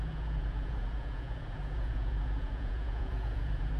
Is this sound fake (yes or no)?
yes